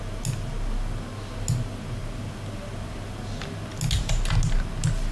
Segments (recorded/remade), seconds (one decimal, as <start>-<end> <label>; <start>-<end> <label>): 0.0-5.1 recorded